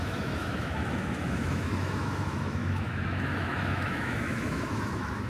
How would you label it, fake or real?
fake